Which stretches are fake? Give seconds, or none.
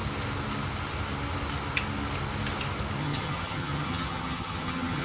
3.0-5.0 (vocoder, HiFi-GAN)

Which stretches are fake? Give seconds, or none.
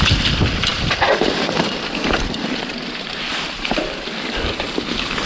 0.7-2.9 (vocoder, BigVGAN v2); 3.3-3.8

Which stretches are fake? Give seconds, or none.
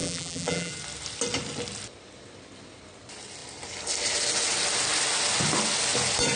0.0-0.7 (vocoder, BigVGAN v2)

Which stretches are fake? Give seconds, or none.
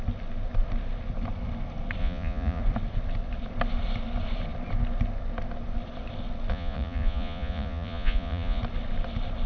2.0-2.6 (vocoder, Vocos); 6.5-8.6